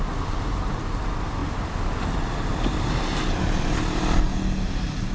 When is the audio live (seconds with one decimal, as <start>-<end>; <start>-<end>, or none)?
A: 0.0-5.1